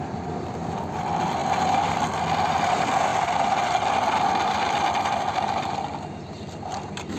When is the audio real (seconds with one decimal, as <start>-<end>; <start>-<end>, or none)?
0.0-7.2